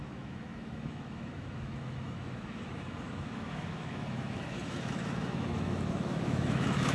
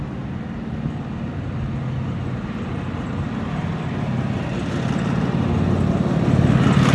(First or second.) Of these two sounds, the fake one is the first